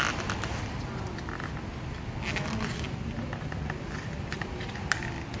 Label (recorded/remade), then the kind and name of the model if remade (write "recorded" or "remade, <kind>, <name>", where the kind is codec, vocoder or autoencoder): recorded